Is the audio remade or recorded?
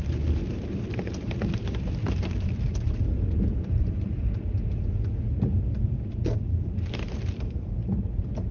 remade